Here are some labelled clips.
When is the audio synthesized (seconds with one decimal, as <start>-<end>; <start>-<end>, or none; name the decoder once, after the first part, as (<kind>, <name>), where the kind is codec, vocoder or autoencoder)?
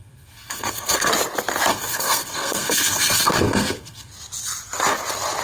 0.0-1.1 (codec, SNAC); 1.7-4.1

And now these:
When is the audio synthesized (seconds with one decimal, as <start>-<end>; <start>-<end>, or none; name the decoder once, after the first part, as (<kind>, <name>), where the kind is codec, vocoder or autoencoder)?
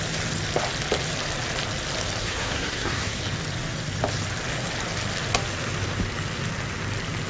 2.2-3.2 (codec, SNAC)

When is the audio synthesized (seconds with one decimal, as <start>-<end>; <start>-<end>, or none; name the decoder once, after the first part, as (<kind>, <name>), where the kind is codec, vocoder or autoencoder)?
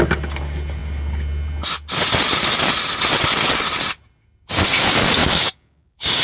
5.2-6.2 (codec, DAC)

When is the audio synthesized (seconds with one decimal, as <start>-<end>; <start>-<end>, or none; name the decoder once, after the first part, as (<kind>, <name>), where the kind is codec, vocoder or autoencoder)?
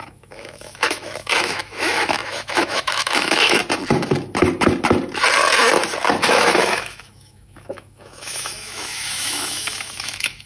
0.0-3.6 (autoencoder, DAC-VAE); 6.2-10.5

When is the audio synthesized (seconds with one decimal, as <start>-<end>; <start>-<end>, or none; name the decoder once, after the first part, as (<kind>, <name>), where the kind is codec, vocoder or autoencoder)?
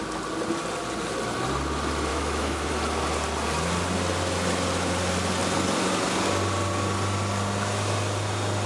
2.1-2.7 (autoencoder, DAC-VAE)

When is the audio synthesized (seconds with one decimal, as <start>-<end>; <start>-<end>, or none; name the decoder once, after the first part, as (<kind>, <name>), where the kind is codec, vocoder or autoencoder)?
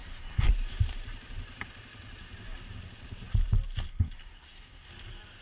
0.0-0.5 (codec, SNAC); 3.9-4.9